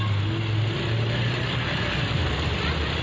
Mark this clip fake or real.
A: real